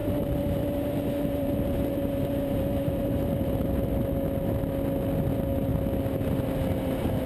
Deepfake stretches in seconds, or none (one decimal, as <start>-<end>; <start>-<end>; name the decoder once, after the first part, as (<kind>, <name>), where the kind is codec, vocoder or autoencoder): 0.0-3.9 (vocoder, BigVGAN v2)